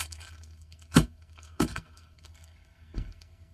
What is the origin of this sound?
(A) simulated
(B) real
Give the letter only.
A